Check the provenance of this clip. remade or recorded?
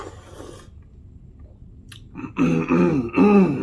recorded